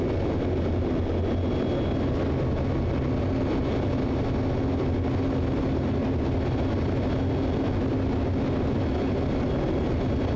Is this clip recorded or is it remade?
recorded